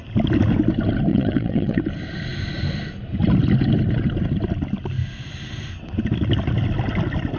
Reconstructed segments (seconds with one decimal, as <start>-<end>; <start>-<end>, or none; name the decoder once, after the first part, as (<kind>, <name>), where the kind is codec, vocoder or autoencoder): 1.1-1.8 (vocoder, WaveNeXt)